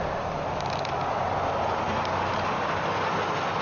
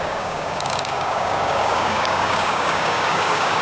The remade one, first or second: second